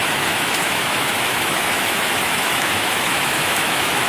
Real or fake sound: fake